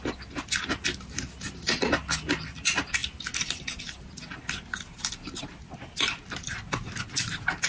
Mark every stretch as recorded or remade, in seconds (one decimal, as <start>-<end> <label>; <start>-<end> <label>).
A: 0.0-7.7 recorded